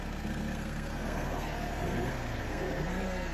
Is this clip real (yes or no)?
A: no